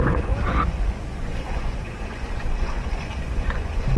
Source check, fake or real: fake